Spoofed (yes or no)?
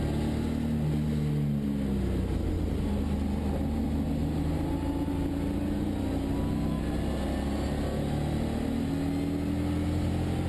no